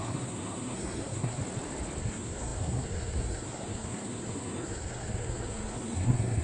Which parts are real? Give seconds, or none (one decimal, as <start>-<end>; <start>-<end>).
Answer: 1.4-2.0